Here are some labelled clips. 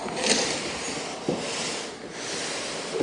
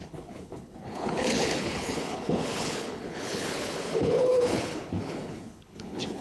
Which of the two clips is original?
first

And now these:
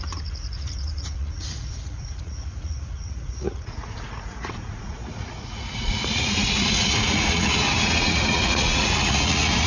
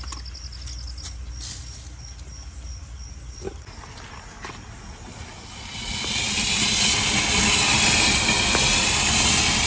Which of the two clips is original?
second